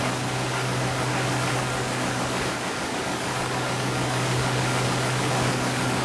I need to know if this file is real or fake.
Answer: fake